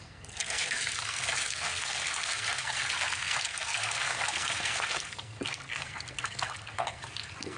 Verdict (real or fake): fake